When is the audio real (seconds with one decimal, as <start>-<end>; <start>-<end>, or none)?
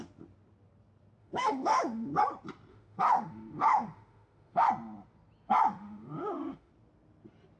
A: 0.0-1.2; 2.1-2.7; 4.7-5.7; 6.7-7.6